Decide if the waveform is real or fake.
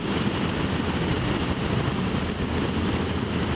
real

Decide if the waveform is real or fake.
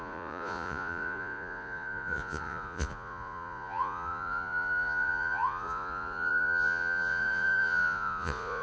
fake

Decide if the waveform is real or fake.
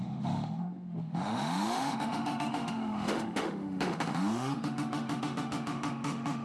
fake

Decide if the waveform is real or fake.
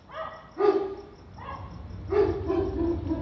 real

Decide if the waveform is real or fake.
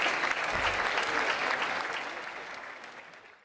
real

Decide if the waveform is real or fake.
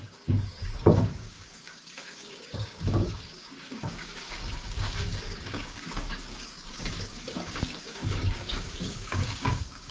fake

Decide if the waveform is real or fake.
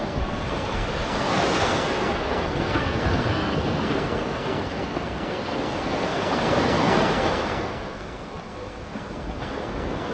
fake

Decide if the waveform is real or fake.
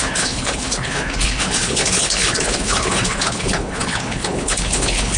fake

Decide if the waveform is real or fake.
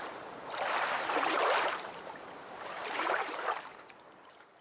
fake